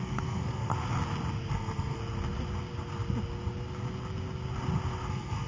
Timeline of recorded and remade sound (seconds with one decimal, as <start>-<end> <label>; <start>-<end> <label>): 0.0-0.7 remade; 0.7-1.5 recorded; 1.5-2.0 remade; 2.0-5.1 recorded; 5.1-5.5 remade